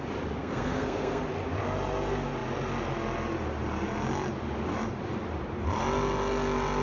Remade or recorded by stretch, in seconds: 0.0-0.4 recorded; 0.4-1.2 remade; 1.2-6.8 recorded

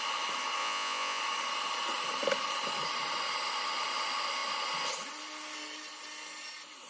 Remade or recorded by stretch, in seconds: 0.0-0.6 recorded; 0.6-1.2 remade; 1.2-6.9 recorded

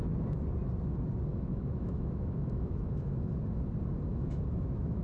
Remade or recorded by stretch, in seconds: 0.0-1.3 recorded; 1.3-3.3 remade; 3.3-4.1 recorded; 4.1-5.0 remade

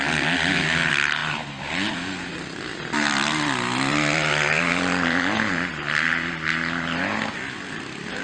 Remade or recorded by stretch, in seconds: 0.0-2.7 recorded; 2.7-5.7 remade; 5.7-8.2 recorded

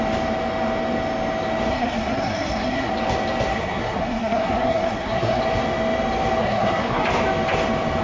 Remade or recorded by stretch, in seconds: 0.0-1.7 recorded; 1.7-2.9 remade; 2.9-3.5 recorded; 3.5-5.4 remade; 5.4-6.4 recorded; 6.4-7.0 remade; 7.0-8.0 recorded

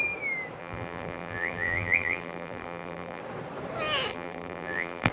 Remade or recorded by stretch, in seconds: 0.0-0.6 recorded; 0.6-3.2 remade; 3.2-4.1 recorded; 4.1-5.1 remade

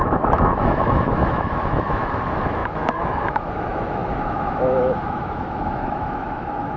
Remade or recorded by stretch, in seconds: 0.0-6.8 remade

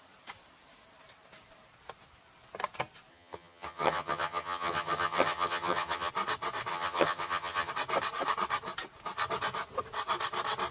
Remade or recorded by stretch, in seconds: 0.0-3.1 recorded; 3.1-6.1 remade; 6.1-6.7 recorded; 6.7-7.7 remade; 7.7-10.7 recorded